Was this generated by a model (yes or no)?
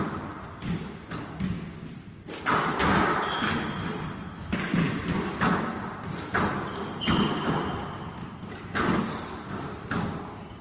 no